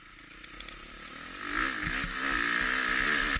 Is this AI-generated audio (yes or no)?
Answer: no